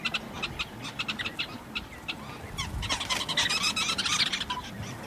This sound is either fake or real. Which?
real